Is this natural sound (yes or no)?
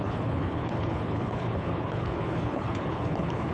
no